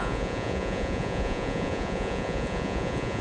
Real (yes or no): no